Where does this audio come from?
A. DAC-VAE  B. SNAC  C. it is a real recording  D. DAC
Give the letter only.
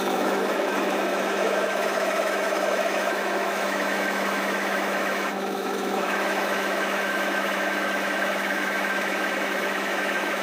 A